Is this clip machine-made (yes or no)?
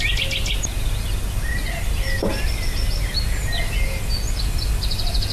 no